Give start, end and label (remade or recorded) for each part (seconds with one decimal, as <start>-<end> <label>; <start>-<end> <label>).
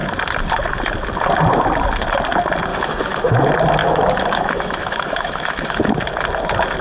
0.0-2.7 recorded; 2.7-3.4 remade; 3.4-3.8 recorded; 3.8-5.9 remade; 5.9-6.8 recorded